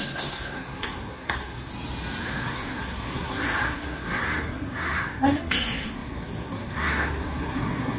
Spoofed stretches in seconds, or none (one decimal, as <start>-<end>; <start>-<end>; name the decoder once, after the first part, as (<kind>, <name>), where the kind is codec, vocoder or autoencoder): 0.0-1.7 (codec, SNAC); 2.2-8.0